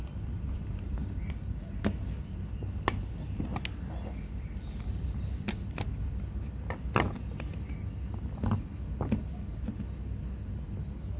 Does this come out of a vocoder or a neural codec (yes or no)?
no